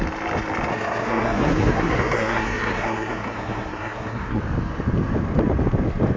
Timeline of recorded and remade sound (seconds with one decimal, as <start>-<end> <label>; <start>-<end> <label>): 0.0-0.7 recorded; 0.7-4.4 remade; 4.4-6.2 recorded